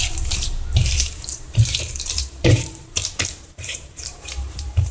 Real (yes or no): no